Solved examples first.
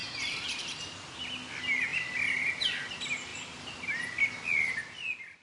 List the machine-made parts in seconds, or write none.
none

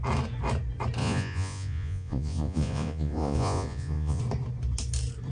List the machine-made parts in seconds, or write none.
1.0-4.2 (vocoder, Vocos)